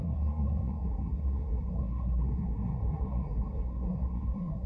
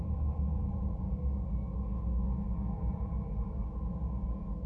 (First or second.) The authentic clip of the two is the second